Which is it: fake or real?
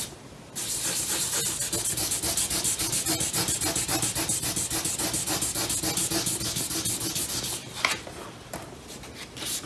real